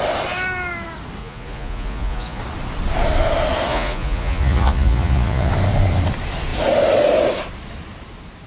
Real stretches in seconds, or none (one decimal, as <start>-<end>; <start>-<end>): 0.0-1.2; 2.4-3.7; 5.5-8.5